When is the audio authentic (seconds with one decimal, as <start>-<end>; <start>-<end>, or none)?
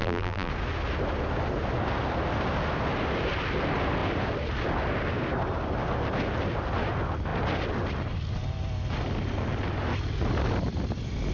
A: 0.5-11.3